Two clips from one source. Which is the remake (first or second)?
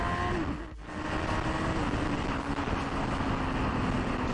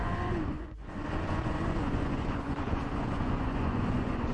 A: second